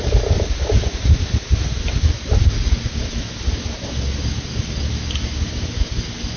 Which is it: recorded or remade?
recorded